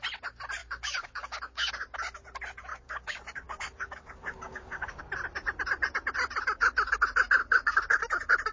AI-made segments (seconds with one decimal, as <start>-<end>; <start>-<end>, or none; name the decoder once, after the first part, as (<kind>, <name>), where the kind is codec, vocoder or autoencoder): 0.6-1.7 (codec, DAC); 2.7-5.0; 7.4-8.0